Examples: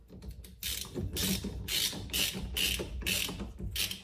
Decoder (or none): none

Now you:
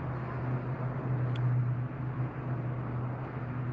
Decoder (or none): none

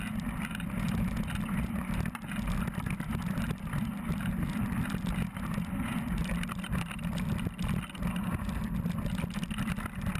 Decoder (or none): none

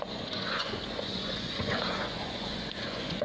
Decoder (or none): vocoder, Vocos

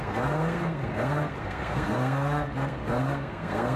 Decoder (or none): codec, SNAC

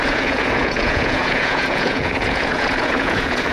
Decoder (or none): vocoder, Vocos